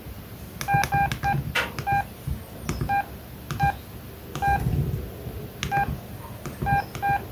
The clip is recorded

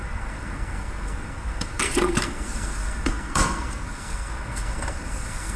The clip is remade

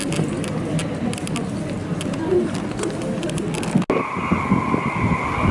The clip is recorded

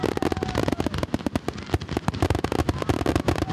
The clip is recorded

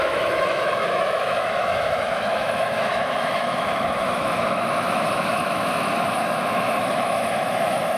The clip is remade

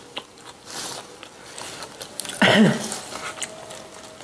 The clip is recorded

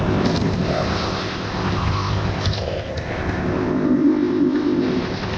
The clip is remade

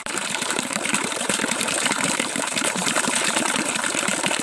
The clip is remade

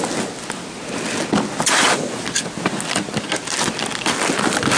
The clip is recorded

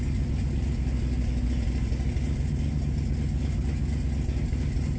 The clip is recorded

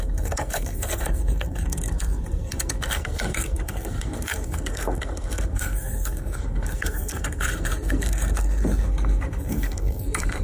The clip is remade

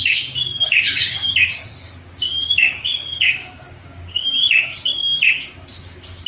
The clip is remade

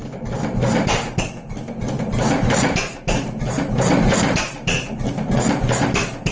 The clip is remade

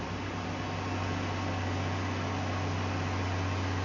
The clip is recorded